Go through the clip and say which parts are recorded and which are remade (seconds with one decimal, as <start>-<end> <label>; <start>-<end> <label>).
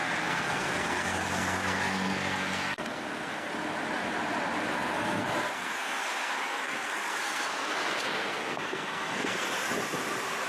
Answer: 0.0-3.5 remade; 3.5-4.7 recorded; 4.7-9.5 remade; 9.5-10.5 recorded